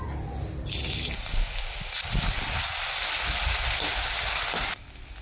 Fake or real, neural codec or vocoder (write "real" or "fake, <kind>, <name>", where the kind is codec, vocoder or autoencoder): real